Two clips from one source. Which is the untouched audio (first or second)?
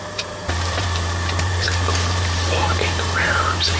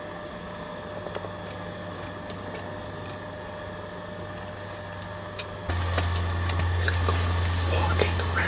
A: second